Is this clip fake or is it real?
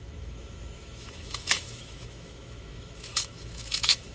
fake